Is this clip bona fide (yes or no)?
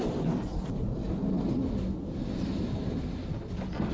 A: yes